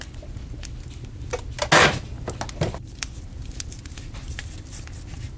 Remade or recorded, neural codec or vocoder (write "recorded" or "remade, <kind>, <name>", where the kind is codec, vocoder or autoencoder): recorded